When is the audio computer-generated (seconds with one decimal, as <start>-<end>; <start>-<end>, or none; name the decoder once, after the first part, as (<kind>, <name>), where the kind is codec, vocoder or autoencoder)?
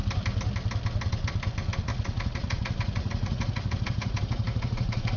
1.9-5.2 (vocoder, Vocos)